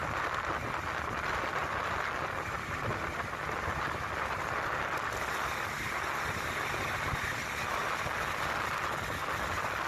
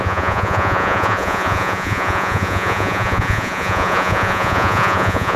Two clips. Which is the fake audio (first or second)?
second